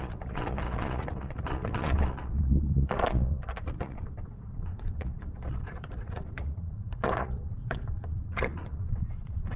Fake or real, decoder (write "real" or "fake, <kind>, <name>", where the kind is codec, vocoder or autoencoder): fake, vocoder, Vocos